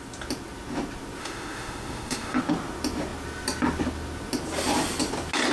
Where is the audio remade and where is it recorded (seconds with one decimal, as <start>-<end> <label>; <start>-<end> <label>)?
0.0-1.2 recorded; 1.2-2.4 remade; 2.4-5.5 recorded